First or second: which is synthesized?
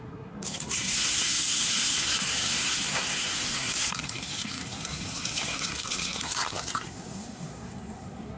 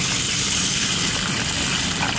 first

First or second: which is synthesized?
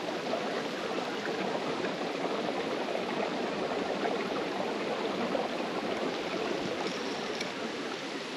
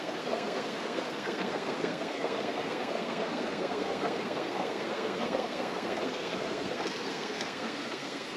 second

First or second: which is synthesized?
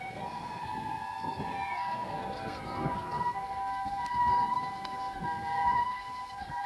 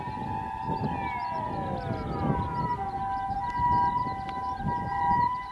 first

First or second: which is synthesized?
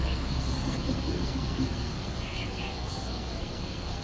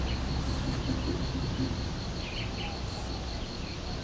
first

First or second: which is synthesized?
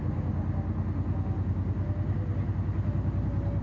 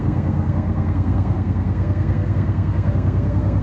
second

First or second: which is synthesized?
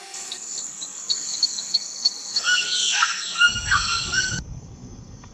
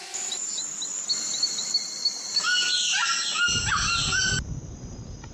first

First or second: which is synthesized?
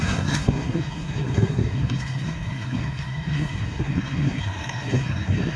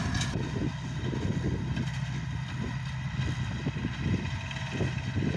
first